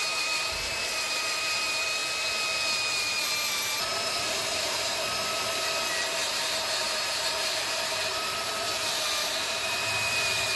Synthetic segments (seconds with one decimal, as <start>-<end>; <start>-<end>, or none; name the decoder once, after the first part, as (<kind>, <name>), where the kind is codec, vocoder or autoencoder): 0.0-2.0 (vocoder, BigVGAN v2); 2.9-10.6

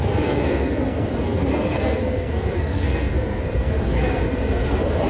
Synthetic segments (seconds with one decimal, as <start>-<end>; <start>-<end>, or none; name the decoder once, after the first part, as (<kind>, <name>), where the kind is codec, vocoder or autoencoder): 0.0-5.1 (codec, SNAC)

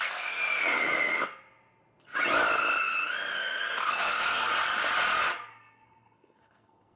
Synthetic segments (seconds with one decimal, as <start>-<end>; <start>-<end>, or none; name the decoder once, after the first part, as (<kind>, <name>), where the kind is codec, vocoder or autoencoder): 0.0-0.4 (codec, SNAC); 3.4-4.5; 5.5-7.0

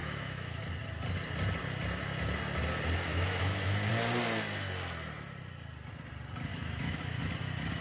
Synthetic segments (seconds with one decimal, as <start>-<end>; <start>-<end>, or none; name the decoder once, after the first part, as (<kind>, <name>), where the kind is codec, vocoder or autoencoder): 0.0-0.6 (autoencoder, DAC-VAE); 3.1-3.9; 6.5-7.2

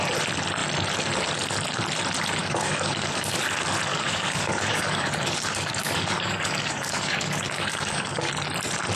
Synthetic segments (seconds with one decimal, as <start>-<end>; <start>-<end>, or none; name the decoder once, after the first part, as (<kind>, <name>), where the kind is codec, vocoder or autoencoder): 2.4-3.4 (codec, DAC); 3.9-8.3

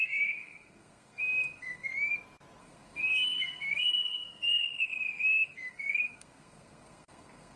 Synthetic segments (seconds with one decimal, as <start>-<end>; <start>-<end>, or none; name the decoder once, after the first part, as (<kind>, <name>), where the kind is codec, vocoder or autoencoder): 0.0-1.9 (codec, SNAC); 2.6-7.6

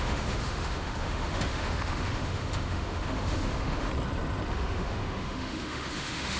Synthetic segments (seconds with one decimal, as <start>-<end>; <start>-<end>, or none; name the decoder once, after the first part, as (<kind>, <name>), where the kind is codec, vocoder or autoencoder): 0.0-3.9 (autoencoder, DAC-VAE); 4.5-6.4